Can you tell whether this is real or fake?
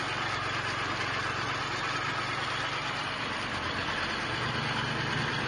real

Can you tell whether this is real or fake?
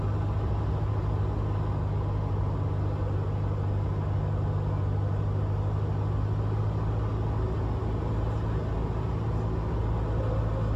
real